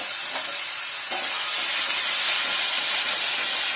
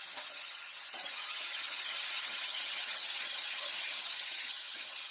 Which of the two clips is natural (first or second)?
first